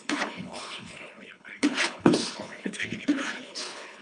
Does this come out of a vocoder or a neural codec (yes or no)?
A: yes